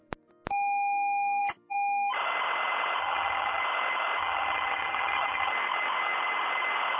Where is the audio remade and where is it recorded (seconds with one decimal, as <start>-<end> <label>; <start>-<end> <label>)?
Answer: 0.0-3.0 recorded; 3.0-3.6 remade; 3.6-4.2 recorded; 4.2-5.5 remade; 5.5-7.0 recorded